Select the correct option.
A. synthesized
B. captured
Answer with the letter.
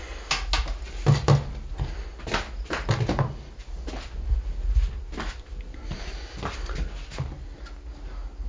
B